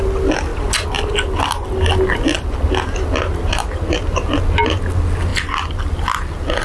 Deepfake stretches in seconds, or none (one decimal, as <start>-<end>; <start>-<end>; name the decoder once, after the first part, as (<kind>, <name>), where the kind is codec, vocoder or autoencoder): none